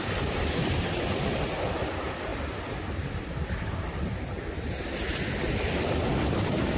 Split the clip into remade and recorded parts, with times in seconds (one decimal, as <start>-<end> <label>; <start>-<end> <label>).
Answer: 0.0-6.8 recorded